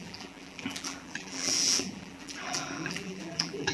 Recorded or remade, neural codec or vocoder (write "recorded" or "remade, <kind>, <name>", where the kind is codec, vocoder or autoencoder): remade, vocoder, BigVGAN v2